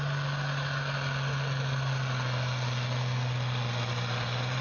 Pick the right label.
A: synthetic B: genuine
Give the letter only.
B